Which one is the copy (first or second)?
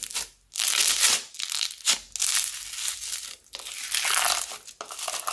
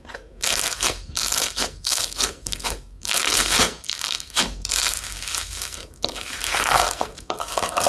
second